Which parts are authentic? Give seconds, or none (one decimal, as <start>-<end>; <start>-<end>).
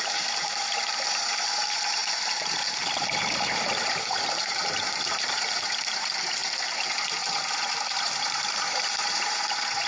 none